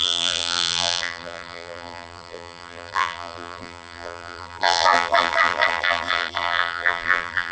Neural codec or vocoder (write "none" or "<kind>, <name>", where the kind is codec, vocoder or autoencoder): vocoder, BigVGAN v2